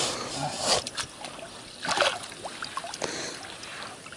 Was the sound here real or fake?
real